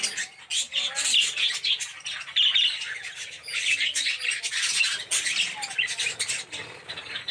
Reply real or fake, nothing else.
real